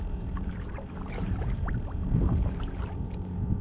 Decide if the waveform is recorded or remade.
remade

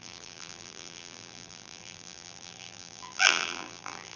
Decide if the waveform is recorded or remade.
remade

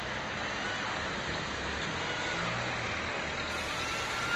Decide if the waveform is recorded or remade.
recorded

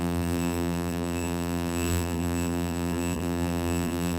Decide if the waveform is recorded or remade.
remade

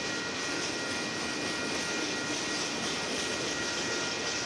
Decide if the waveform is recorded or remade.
recorded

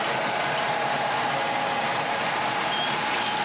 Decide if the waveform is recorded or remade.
recorded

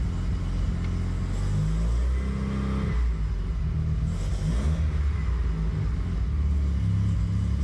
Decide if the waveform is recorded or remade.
recorded